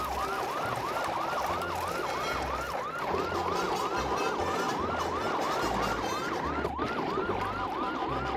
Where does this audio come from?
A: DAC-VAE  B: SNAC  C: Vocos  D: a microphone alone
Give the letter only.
D